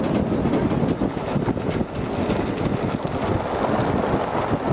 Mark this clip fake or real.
real